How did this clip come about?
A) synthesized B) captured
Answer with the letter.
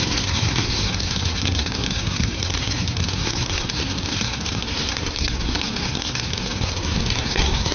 A